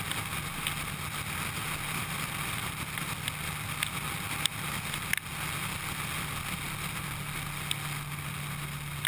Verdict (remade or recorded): recorded